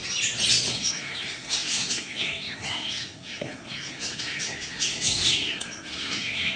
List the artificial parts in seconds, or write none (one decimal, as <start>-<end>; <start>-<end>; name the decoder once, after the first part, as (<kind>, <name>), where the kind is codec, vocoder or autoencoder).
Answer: 0.7-6.6 (codec, SNAC)